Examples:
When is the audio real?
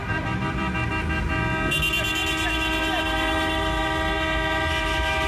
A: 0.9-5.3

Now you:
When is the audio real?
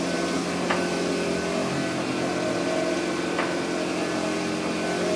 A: 0.0-5.2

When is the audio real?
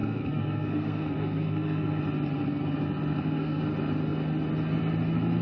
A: 2.0-3.1; 3.6-5.4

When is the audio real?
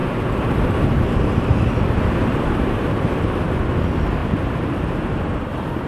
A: 3.4-4.2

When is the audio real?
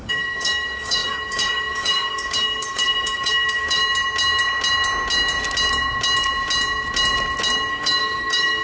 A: 3.8-7.7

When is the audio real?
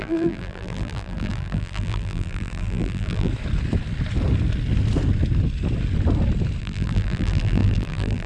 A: 3.3-6.6